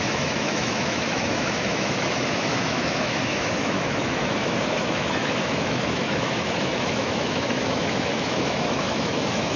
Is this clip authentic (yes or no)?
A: no